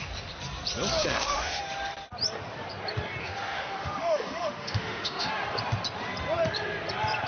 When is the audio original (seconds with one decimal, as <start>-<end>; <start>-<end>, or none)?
0.0-1.0; 1.6-3.2; 5.3-7.3